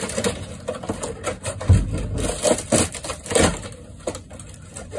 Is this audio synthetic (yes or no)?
no